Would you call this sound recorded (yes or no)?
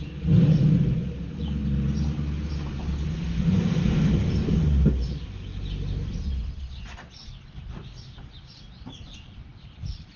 yes